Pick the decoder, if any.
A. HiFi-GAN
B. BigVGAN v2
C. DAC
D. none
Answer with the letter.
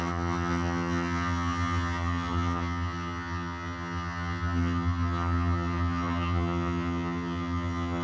A